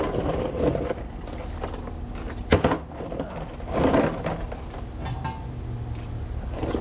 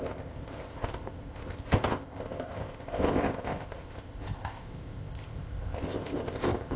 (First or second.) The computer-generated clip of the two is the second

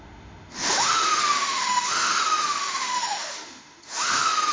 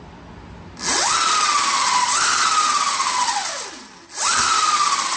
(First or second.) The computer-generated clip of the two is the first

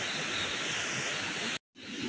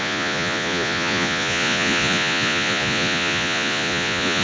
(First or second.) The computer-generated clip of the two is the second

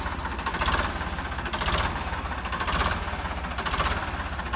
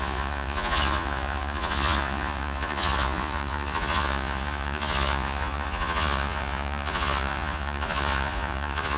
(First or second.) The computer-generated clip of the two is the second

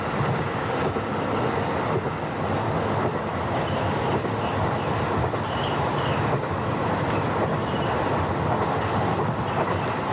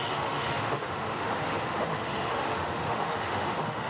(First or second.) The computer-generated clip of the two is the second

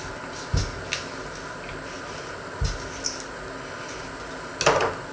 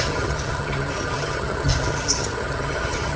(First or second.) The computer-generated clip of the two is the second